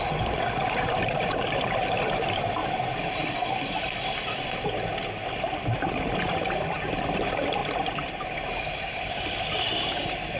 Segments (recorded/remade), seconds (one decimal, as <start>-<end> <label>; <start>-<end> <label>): 0.0-10.4 recorded